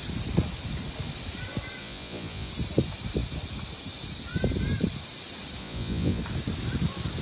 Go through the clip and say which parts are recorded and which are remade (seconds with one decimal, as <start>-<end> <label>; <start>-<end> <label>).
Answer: 0.0-1.8 recorded; 1.8-2.5 remade; 2.5-5.6 recorded; 5.6-6.2 remade; 6.2-7.2 recorded